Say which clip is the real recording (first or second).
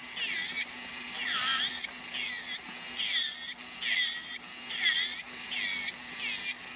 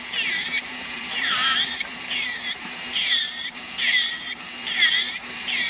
first